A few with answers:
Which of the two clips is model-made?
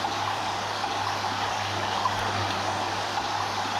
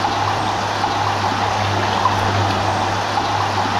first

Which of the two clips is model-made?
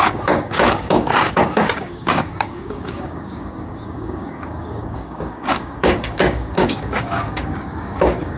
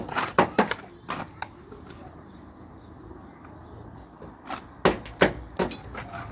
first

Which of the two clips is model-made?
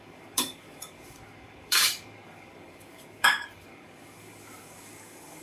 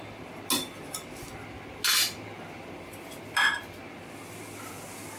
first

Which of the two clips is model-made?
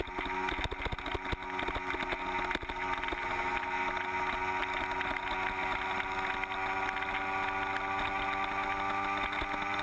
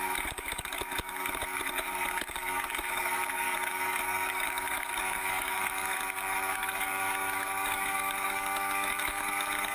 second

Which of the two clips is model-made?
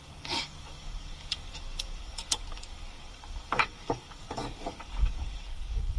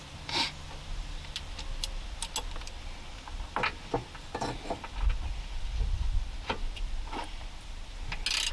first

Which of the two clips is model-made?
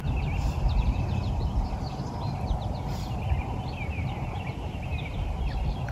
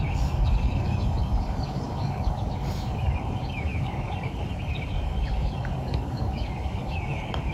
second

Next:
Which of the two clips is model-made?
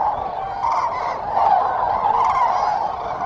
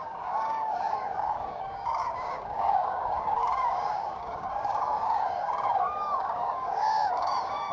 second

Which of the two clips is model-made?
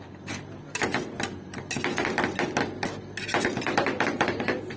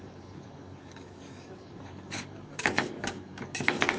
second